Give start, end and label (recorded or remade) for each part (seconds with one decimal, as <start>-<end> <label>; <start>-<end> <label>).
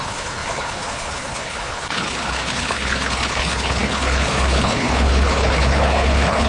0.0-6.5 remade